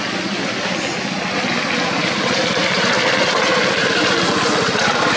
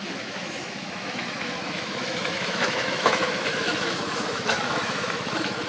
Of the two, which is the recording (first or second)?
first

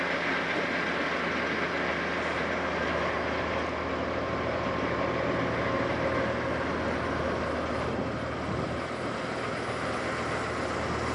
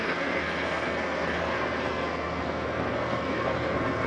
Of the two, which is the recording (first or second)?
first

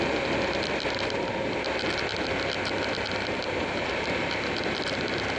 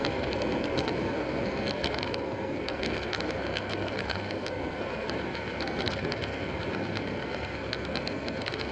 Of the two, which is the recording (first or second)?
first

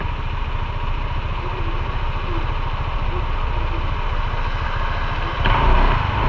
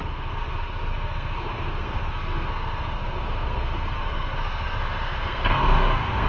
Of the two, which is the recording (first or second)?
first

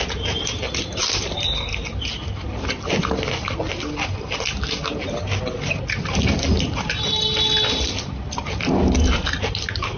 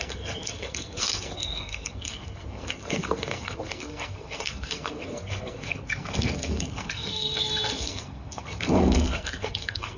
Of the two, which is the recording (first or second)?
first